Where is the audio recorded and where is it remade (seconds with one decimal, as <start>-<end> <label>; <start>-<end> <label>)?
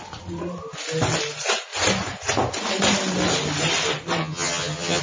0.0-4.2 recorded; 4.2-5.0 remade